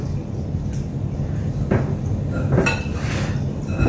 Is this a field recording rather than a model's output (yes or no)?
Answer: yes